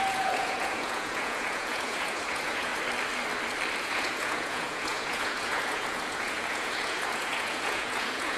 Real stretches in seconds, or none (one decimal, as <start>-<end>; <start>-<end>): 2.7-3.8